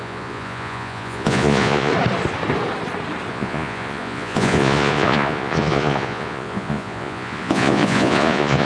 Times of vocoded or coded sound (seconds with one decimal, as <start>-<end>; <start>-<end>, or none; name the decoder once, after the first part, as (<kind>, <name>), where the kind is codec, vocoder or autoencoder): 0.0-1.9 (vocoder, Vocos); 3.3-8.7